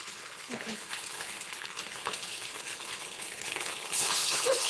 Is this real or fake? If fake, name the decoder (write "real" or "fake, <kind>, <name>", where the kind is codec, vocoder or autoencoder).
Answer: fake, codec, HILCodec